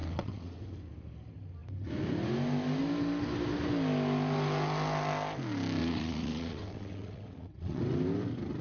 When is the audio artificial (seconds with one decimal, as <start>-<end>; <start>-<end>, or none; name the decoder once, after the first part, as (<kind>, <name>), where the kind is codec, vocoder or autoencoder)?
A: 0.0-0.6 (vocoder, WaveNeXt); 5.8-7.8